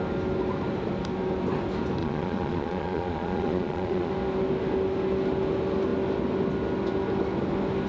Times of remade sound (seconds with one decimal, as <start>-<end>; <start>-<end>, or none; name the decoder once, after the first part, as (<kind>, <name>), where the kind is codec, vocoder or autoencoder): 2.0-4.1 (vocoder, Vocos)